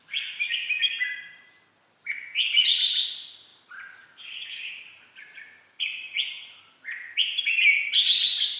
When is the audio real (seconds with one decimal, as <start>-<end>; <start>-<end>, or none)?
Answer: 0.0-8.6